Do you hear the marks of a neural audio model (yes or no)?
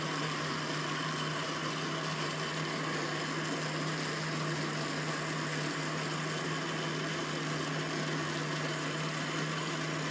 no